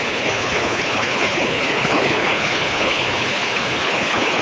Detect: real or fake fake